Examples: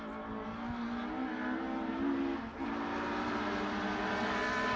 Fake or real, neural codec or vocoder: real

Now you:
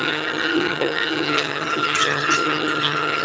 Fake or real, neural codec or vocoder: fake, vocoder, HiFi-GAN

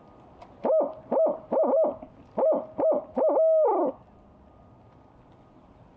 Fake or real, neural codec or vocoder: real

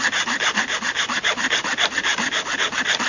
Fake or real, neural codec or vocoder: real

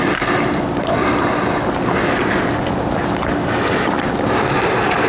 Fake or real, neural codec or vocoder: real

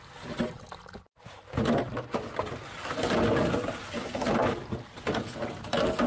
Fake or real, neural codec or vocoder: real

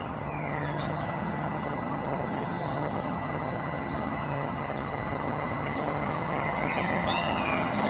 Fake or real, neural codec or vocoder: fake, vocoder, HiFi-GAN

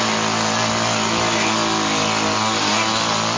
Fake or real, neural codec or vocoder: real